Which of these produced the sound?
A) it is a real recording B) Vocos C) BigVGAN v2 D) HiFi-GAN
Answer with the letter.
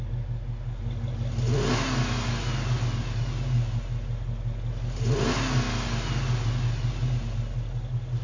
A